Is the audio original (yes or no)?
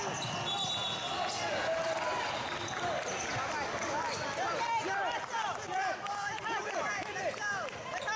yes